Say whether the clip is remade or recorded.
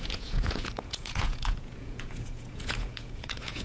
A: remade